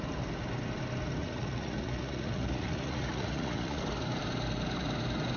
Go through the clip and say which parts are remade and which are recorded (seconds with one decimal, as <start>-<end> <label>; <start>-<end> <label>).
0.0-1.2 recorded; 1.2-3.8 remade; 3.8-5.4 recorded